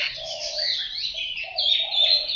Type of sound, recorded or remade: remade